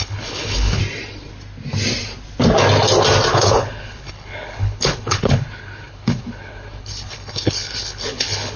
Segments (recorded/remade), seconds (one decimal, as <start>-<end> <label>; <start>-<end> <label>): 0.0-0.8 remade; 0.8-3.3 recorded; 3.3-8.6 remade